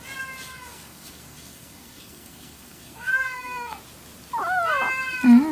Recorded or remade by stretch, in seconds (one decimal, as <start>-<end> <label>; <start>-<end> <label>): 0.0-0.5 recorded; 0.5-3.8 remade; 3.8-5.5 recorded